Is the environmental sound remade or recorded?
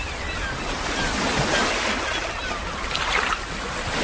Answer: recorded